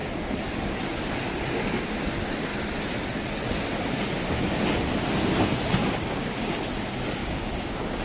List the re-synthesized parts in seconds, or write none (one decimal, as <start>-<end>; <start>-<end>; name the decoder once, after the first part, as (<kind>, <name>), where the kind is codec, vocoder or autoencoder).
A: 5.8-6.6 (codec, DAC); 7.2-8.0